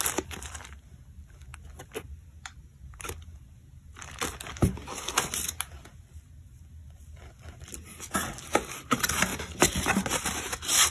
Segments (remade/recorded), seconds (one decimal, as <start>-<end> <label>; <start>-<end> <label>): 0.0-9.3 recorded; 9.3-10.9 remade